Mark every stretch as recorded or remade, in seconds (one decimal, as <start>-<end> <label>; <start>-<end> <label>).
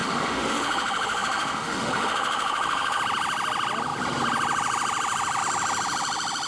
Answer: 0.0-3.0 remade; 3.0-6.5 recorded